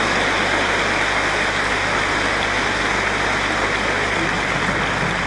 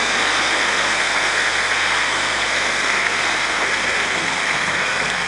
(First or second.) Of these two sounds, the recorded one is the first